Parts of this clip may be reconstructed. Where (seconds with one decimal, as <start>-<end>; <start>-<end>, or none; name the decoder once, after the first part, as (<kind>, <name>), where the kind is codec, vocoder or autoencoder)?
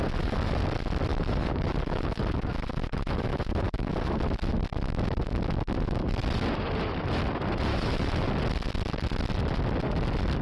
1.1-2.2 (autoencoder, DAC-VAE); 7.7-8.3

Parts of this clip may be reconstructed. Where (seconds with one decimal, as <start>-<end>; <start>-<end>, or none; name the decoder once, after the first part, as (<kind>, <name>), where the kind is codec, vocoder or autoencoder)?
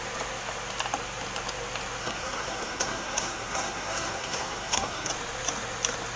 2.0-5.1 (codec, SNAC)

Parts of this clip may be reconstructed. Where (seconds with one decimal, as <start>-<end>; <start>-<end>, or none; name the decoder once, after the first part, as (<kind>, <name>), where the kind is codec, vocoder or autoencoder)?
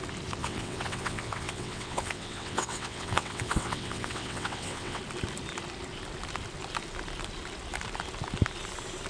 0.4-5.0 (vocoder, WaveNeXt)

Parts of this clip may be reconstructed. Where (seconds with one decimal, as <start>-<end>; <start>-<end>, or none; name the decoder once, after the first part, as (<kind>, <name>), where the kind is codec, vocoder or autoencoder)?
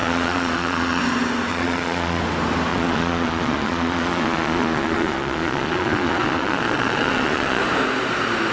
0.0-1.0 (vocoder, Vocos); 1.5-2.2; 2.7-7.6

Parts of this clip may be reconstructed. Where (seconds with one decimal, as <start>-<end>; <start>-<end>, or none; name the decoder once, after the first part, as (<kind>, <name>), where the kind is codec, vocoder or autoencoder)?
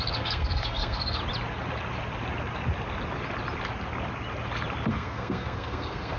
0.0-1.2 (codec, SNAC); 4.9-6.2